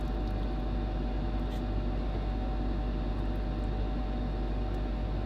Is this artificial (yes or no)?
no